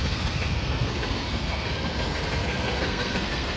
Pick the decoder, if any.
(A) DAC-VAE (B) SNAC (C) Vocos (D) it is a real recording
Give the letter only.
B